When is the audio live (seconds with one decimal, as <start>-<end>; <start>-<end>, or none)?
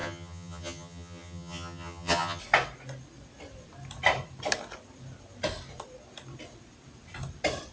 2.4-7.7